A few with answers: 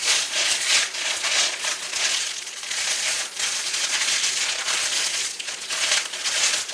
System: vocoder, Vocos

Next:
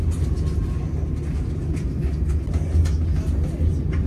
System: none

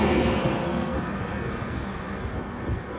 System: codec, SNAC